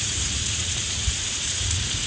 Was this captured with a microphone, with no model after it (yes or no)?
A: no